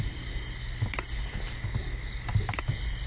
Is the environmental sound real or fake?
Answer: real